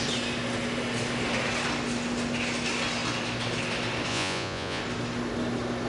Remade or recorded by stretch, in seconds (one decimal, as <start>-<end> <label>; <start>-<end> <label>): 0.0-4.1 recorded; 4.1-4.8 remade; 4.8-5.9 recorded